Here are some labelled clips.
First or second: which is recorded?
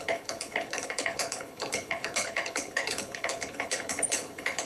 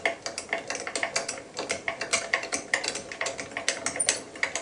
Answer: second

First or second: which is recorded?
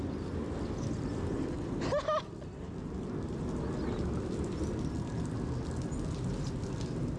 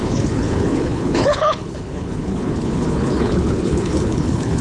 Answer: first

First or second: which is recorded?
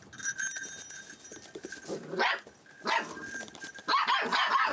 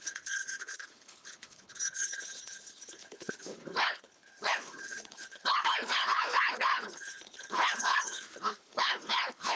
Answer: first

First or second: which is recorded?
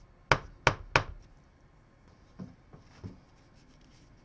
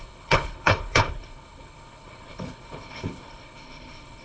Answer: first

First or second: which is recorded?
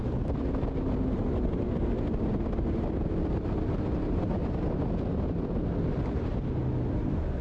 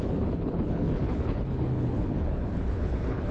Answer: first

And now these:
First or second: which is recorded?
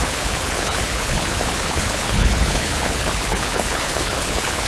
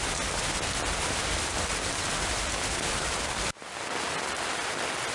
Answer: second